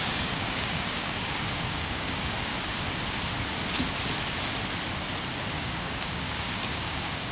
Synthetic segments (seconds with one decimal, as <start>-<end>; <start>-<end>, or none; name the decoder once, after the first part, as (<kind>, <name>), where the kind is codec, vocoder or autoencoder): 0.0-2.5 (codec, DAC); 5.5-7.3